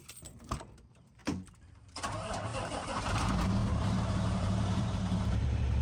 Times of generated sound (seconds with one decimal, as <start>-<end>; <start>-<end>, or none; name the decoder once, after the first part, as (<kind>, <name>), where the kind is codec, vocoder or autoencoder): 0.0-1.2 (vocoder, BigVGAN v2); 1.7-5.8